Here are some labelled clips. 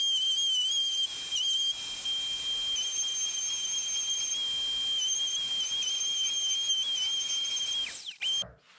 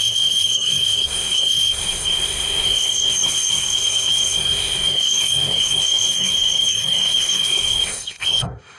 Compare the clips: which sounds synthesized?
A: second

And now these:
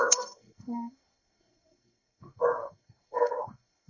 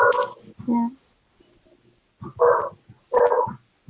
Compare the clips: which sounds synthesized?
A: first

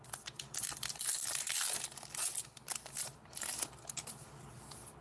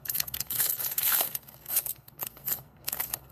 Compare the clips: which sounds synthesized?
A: second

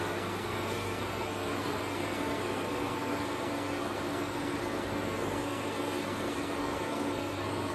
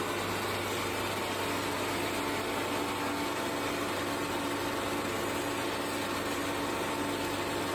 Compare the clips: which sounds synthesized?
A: first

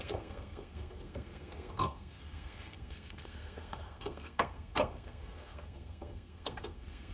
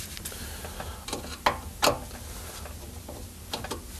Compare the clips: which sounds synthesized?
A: first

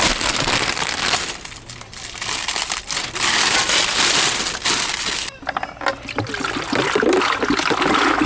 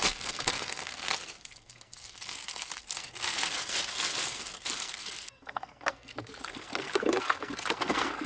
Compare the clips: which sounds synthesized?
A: second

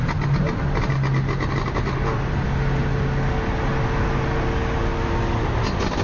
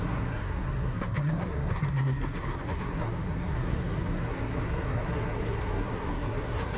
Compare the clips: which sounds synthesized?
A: second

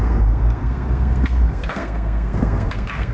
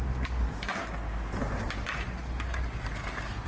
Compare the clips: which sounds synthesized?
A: first